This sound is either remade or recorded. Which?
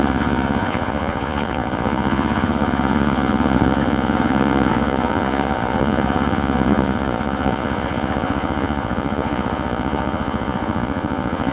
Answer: remade